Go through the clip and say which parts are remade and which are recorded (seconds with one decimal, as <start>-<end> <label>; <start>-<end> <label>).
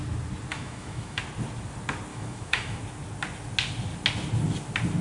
0.0-0.5 recorded; 0.5-1.2 remade; 1.2-2.1 recorded; 2.1-2.8 remade; 2.8-5.0 recorded